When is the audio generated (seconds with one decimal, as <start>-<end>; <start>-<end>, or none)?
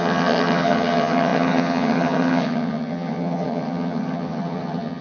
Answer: 0.0-5.0